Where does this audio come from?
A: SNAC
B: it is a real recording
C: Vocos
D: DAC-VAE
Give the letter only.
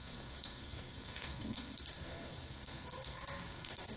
A